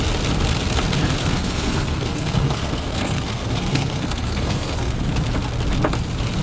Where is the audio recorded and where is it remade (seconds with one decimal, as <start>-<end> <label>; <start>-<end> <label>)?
0.0-1.2 recorded; 1.2-5.0 remade; 5.0-6.4 recorded